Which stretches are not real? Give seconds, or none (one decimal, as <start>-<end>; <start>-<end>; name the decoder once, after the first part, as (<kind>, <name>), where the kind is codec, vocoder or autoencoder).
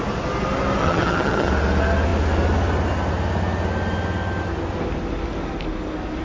0.8-1.5 (vocoder, HiFi-GAN)